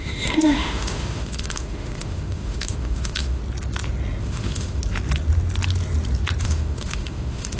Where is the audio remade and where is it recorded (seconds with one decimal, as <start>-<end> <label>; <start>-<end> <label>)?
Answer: 0.0-3.4 remade; 3.4-4.2 recorded; 4.2-4.8 remade; 4.8-6.4 recorded; 6.4-7.6 remade